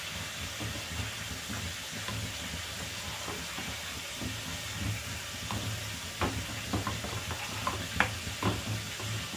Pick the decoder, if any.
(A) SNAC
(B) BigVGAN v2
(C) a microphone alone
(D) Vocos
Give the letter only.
C